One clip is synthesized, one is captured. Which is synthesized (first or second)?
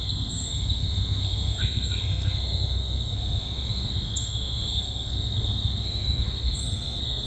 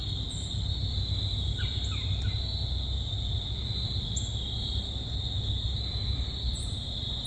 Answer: first